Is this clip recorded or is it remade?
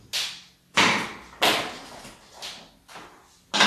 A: recorded